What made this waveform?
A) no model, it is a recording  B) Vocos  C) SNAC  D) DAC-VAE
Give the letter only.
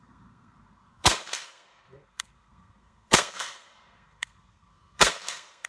C